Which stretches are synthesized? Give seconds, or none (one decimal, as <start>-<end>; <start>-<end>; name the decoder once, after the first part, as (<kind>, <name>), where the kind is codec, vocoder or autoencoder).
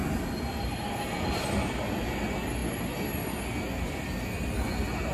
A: none